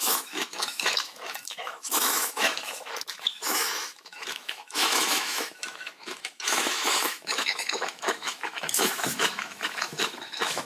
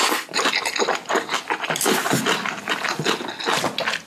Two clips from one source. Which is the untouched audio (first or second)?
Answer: second